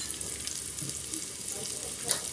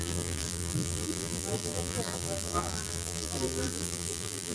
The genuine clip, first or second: first